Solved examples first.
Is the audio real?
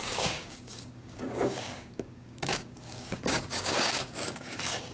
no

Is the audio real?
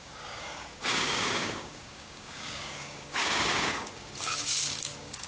no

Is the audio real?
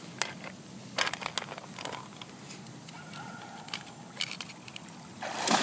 yes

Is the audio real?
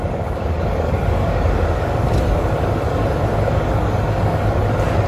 no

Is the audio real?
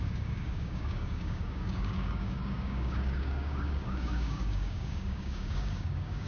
no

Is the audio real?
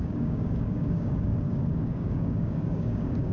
no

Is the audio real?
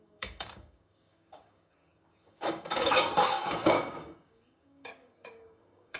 no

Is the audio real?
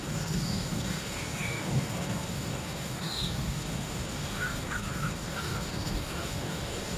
no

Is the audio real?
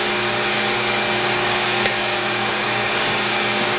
no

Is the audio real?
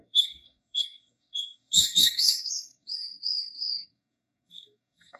no